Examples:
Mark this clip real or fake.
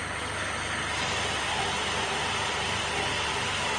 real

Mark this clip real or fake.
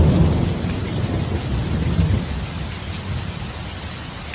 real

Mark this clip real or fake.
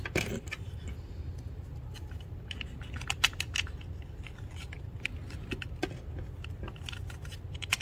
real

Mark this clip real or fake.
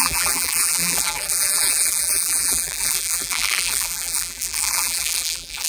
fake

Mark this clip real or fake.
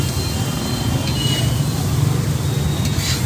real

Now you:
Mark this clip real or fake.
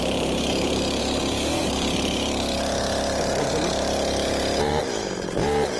fake